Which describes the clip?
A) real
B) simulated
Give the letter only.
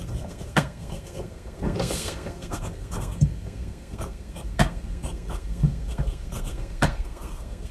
B